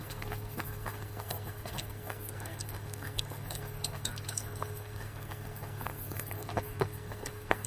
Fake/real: fake